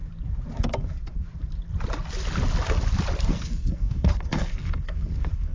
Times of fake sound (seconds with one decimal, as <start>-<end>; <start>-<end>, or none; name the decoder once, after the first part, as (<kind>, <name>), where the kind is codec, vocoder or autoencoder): 3.3-5.5 (codec, SNAC)